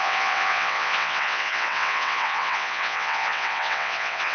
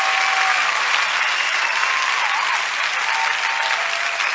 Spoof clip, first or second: first